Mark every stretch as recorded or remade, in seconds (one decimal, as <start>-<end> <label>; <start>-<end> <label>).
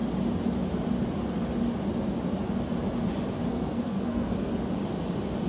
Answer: 0.0-3.5 recorded; 3.5-4.5 remade; 4.5-5.5 recorded